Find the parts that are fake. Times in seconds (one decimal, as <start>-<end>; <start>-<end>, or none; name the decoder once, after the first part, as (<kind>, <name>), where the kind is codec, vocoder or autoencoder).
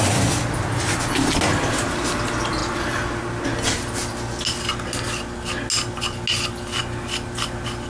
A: none